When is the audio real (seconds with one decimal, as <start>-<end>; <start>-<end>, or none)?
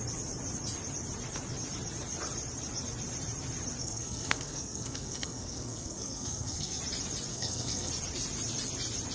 0.0-3.8; 6.8-7.3; 7.9-9.1